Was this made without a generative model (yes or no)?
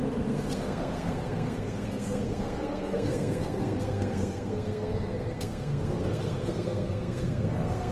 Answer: no